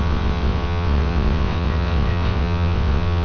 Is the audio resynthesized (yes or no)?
yes